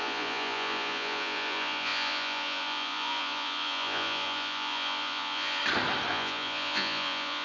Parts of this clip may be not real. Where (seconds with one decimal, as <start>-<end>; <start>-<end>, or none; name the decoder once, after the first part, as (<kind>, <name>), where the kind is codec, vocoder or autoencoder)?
0.0-5.6 (vocoder, Vocos); 6.1-7.4

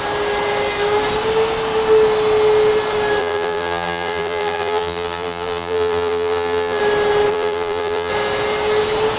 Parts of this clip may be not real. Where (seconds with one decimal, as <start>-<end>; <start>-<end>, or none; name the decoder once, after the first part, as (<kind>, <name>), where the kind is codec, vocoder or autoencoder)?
3.2-6.8 (vocoder, BigVGAN v2); 7.3-8.1